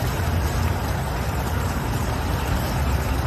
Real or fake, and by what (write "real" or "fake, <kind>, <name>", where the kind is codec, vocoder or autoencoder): fake, vocoder, BigVGAN v2